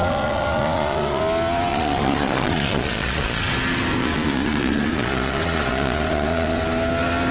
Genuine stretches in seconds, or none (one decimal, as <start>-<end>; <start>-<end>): 1.2-1.7; 3.4-4.0; 6.6-7.3

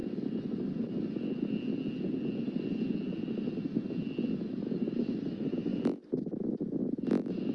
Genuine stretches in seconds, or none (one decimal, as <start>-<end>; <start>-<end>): 0.0-4.5; 5.7-7.5

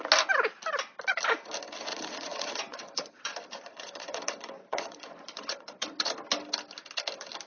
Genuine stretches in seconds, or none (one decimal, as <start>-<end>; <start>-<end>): 0.0-1.9; 6.1-7.5

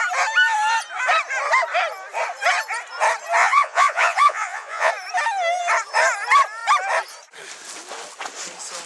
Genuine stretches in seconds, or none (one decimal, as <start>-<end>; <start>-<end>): 0.0-3.4; 4.9-8.9

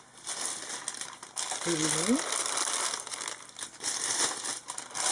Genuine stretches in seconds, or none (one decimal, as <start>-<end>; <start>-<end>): 0.0-5.1

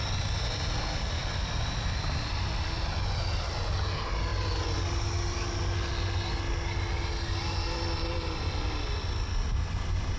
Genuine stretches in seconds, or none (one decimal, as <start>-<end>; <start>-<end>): 0.0-1.2; 3.6-10.2

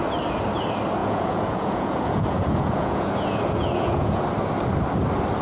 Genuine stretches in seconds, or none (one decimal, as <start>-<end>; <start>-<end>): 0.0-1.0; 4.2-5.4

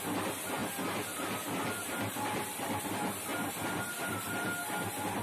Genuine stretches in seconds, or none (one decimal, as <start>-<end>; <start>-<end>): 0.0-5.2